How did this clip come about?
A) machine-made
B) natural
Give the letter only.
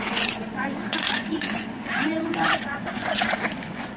A